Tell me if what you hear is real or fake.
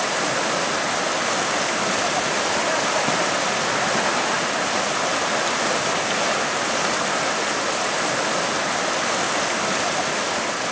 real